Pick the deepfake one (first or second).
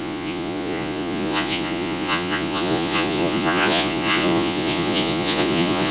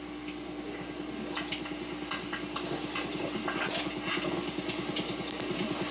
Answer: first